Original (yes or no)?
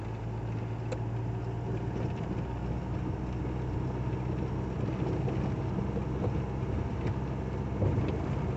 yes